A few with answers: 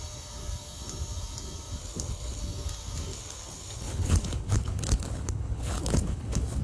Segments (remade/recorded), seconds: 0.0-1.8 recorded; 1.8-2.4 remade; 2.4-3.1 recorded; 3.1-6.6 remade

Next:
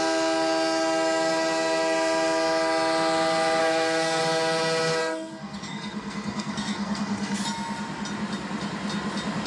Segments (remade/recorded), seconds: 0.0-3.6 recorded; 3.6-4.2 remade; 4.2-5.0 recorded; 5.0-7.4 remade; 7.4-9.5 recorded

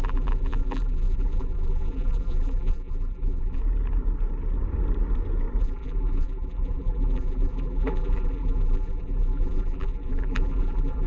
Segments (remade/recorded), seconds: 0.0-3.6 remade; 3.6-5.6 recorded; 5.6-11.1 remade

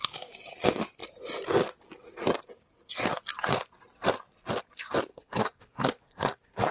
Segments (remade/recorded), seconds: 0.0-5.1 recorded; 5.1-6.7 remade

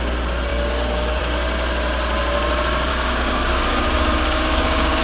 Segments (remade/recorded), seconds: 0.0-0.5 recorded; 0.5-1.2 remade; 1.2-2.9 recorded; 2.9-5.0 remade

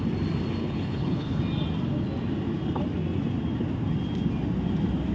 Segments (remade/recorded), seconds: 0.0-0.6 recorded; 0.6-1.4 remade; 1.4-5.1 recorded